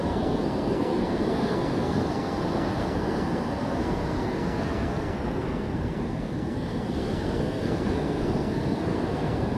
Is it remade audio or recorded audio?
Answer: remade